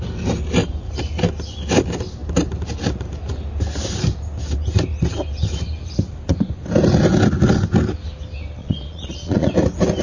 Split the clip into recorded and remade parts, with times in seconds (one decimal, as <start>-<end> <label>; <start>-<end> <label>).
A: 0.0-8.6 recorded; 8.6-9.5 remade; 9.5-10.0 recorded

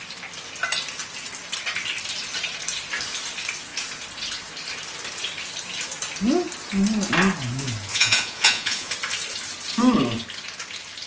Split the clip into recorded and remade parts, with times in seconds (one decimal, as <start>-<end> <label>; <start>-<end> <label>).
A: 0.0-7.9 recorded; 7.9-8.9 remade; 8.9-11.1 recorded

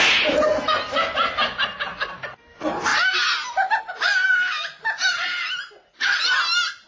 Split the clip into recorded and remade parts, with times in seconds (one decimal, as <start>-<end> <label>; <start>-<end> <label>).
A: 0.0-6.9 recorded

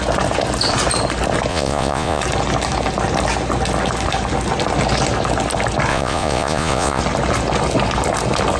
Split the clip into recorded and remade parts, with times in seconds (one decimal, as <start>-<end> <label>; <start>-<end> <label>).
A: 0.0-1.5 recorded; 1.5-2.2 remade; 2.2-5.9 recorded; 5.9-7.0 remade; 7.0-8.6 recorded

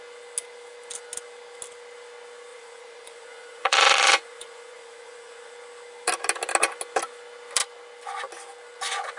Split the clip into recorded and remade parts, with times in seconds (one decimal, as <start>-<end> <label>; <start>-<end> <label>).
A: 0.0-2.5 recorded; 2.5-5.5 remade; 5.5-9.2 recorded